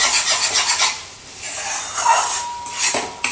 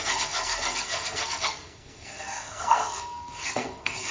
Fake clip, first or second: second